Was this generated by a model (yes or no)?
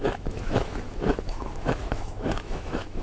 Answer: yes